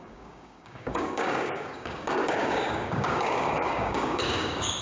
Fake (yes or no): yes